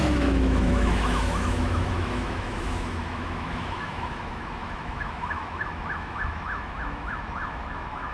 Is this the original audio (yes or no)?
no